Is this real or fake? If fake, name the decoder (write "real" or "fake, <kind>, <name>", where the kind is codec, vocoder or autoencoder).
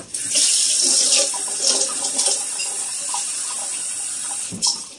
fake, vocoder, BigVGAN v2